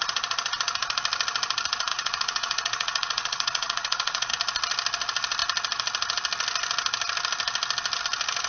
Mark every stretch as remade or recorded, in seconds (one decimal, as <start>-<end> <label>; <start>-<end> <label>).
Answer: 0.0-1.9 recorded; 1.9-4.3 remade; 4.3-8.5 recorded